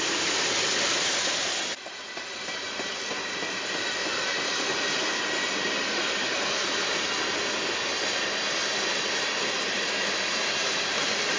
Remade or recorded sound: recorded